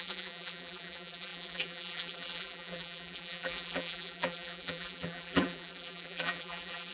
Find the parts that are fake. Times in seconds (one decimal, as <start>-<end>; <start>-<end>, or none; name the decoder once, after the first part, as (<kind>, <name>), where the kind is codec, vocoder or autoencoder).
0.0-6.9 (vocoder, BigVGAN v2)